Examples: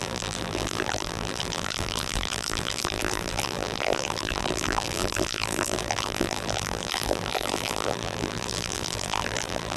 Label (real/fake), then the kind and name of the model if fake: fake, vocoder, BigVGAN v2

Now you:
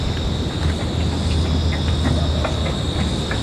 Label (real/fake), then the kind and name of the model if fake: real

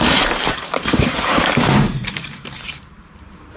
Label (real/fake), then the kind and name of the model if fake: fake, vocoder, BigVGAN v2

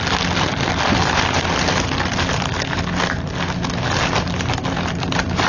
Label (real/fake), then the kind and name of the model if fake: real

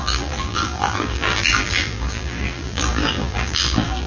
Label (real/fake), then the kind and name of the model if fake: fake, vocoder, BigVGAN v2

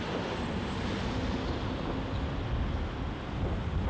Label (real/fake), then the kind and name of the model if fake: real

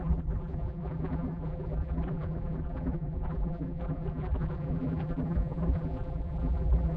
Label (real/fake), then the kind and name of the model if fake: fake, vocoder, BigVGAN v2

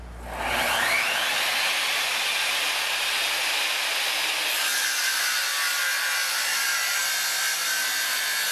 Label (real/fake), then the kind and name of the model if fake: real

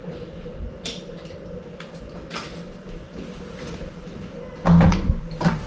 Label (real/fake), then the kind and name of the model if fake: real